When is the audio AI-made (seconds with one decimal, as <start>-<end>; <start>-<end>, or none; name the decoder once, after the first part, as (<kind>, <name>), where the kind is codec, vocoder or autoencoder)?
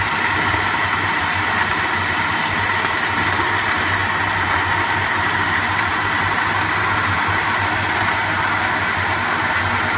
none